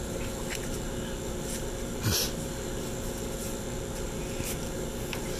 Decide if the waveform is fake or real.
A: real